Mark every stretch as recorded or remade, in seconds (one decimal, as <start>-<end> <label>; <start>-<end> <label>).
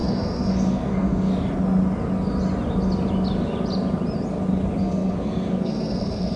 0.0-1.3 remade; 1.3-4.8 recorded; 4.8-6.4 remade